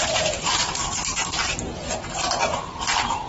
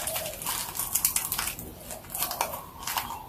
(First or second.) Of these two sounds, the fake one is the first